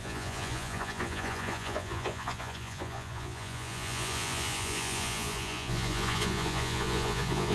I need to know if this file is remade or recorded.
remade